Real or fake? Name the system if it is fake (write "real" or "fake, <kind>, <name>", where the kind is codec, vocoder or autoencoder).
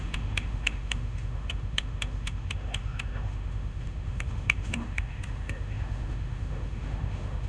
fake, autoencoder, DAC-VAE